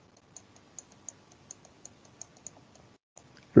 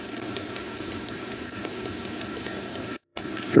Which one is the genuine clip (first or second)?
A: first